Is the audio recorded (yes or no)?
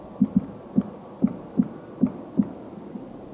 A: yes